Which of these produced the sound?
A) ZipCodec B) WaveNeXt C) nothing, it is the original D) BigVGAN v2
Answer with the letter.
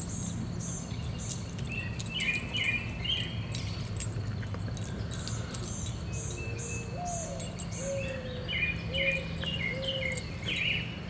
C